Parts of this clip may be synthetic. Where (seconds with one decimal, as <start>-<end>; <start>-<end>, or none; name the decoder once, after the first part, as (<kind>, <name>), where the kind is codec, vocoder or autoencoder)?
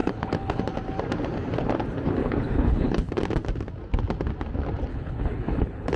0.0-0.6 (codec, HILCodec); 2.2-3.1; 4.9-6.0